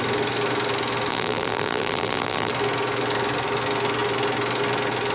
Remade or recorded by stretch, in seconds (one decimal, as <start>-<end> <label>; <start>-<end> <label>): 0.0-1.1 recorded; 1.1-2.5 remade; 2.5-5.1 recorded